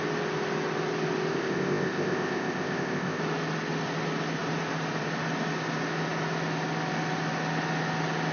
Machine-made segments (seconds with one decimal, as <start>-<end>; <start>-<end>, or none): 1.3-3.2